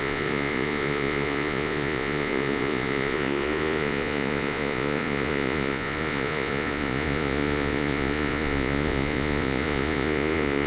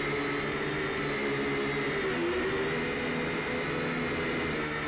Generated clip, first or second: first